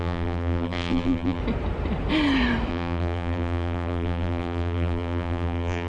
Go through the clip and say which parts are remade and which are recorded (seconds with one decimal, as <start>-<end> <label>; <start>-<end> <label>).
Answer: 0.0-1.4 remade; 1.4-2.7 recorded; 2.7-5.9 remade